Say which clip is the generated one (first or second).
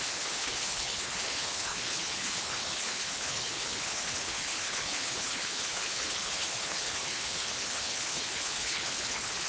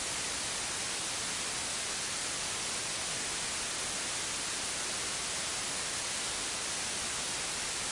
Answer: first